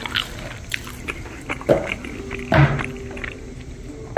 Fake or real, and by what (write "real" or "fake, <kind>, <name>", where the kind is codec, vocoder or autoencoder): real